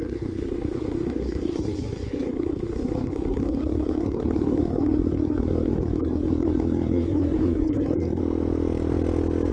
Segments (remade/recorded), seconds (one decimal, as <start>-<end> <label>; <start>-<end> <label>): 0.0-8.2 remade; 8.2-9.5 recorded